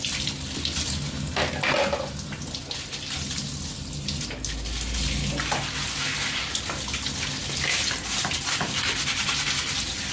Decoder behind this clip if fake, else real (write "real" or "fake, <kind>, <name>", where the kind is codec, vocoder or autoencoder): real